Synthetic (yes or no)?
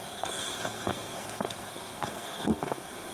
yes